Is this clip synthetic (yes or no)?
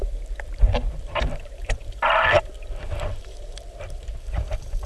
yes